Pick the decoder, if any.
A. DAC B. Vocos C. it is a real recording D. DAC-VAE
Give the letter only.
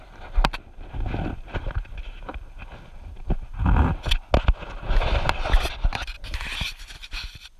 C